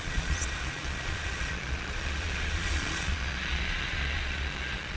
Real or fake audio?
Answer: fake